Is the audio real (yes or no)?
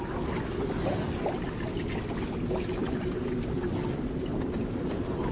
yes